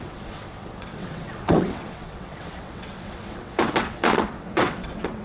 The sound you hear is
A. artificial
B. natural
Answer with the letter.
A